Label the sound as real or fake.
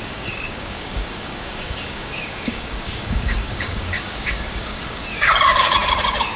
fake